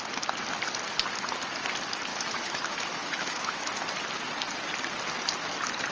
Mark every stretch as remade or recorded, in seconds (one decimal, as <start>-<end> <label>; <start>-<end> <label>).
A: 0.0-2.1 recorded; 2.1-3.7 remade; 3.7-5.9 recorded